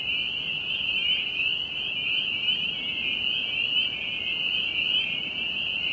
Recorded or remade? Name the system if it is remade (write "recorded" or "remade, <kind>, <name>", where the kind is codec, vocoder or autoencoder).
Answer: recorded